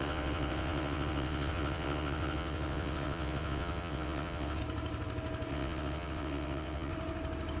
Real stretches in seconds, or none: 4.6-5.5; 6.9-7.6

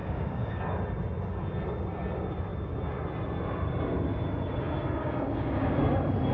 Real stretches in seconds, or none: 0.6-5.0; 5.8-6.3

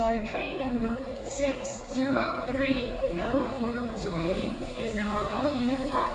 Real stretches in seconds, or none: none

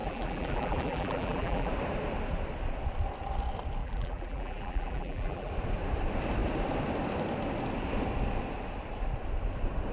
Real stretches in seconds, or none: 1.7-3.8; 5.5-9.9

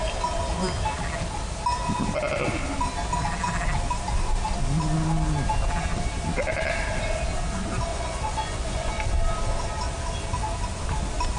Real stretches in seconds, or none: 0.0-7.9; 8.9-11.4

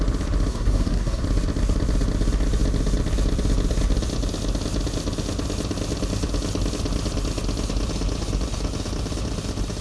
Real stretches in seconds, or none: 0.0-0.5; 1.2-9.8